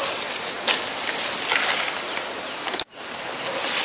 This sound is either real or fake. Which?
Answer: real